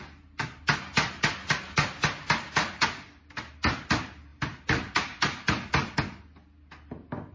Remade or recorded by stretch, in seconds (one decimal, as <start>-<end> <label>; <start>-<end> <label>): 0.0-7.3 recorded